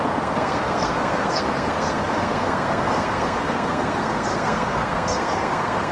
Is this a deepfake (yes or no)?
yes